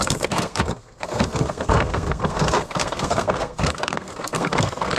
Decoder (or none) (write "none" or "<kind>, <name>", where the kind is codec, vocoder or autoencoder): codec, SNAC